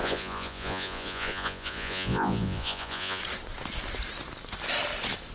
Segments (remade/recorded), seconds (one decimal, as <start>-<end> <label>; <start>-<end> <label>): 0.0-3.2 remade; 3.2-5.3 recorded